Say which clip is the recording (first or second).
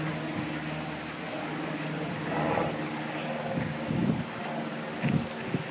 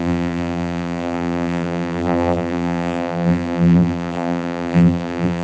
first